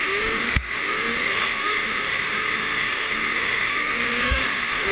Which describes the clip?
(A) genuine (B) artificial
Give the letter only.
B